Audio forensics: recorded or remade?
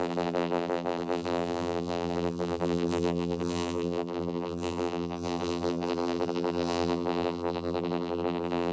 remade